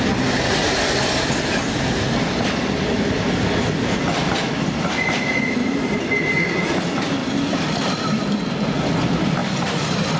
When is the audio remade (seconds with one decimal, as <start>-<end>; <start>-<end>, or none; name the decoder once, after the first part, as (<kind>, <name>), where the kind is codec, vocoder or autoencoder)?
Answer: 5.6-6.8 (vocoder, BigVGAN v2); 7.2-8.7; 9.4-10.2